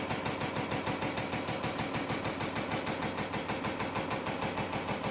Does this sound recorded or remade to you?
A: recorded